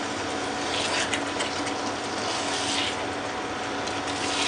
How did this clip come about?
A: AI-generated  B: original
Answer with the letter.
B